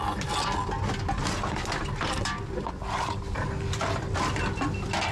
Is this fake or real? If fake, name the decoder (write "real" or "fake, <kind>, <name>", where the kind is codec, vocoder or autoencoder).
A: real